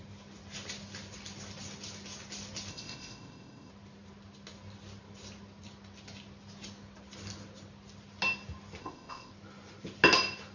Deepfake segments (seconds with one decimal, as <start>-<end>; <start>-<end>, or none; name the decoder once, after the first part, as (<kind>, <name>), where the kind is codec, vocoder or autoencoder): 2.7-3.7 (codec, ZipCodec); 8.8-9.3